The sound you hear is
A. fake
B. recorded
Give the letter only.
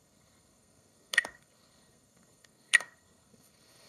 A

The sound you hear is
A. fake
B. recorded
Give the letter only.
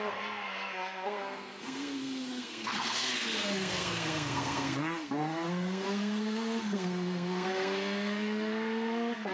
A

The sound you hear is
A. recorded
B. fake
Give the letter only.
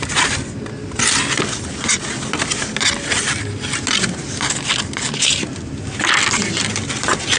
A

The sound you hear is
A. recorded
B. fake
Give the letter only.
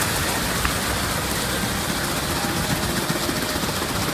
A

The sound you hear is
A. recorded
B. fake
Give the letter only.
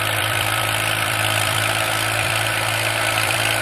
B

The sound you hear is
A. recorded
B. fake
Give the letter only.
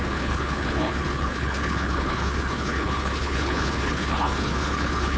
B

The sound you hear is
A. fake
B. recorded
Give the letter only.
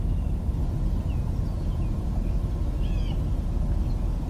B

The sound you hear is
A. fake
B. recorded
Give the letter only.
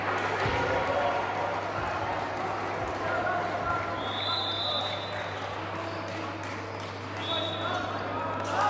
B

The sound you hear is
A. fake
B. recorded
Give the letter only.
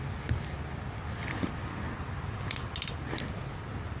B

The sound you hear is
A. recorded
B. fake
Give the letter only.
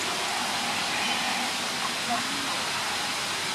A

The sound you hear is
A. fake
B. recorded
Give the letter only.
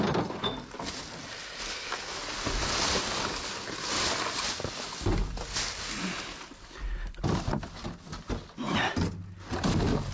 B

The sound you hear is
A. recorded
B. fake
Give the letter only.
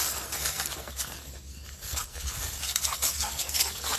B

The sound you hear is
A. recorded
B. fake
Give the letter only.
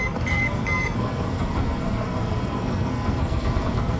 B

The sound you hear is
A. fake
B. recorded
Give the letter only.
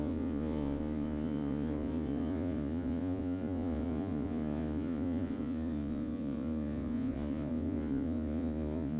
A